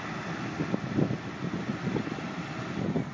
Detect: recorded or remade recorded